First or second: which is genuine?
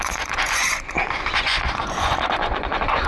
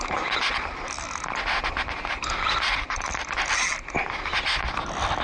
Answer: second